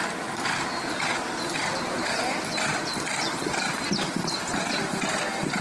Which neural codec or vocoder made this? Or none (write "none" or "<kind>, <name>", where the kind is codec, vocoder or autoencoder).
vocoder, BigVGAN v2